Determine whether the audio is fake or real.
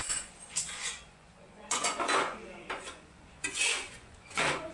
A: fake